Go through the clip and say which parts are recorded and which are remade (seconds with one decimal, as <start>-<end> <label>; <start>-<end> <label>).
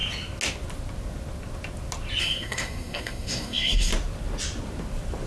0.0-2.2 recorded; 2.2-3.9 remade; 3.9-5.3 recorded